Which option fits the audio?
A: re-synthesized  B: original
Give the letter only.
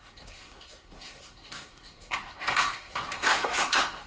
A